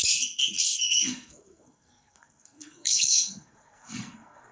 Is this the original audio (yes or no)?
no